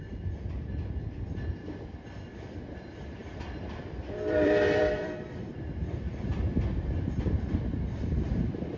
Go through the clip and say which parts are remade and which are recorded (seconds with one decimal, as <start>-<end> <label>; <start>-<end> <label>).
0.0-3.2 recorded; 3.2-5.5 remade; 5.5-8.8 recorded